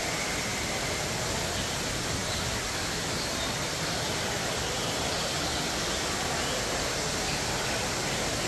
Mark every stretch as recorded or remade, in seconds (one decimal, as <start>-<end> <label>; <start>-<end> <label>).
0.0-8.5 recorded

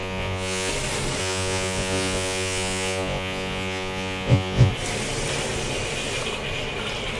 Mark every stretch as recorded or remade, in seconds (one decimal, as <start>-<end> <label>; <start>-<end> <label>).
0.0-0.7 remade; 0.7-1.2 recorded; 1.2-4.7 remade; 4.7-7.2 recorded